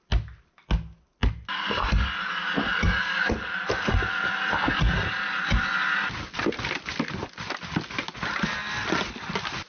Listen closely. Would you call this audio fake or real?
real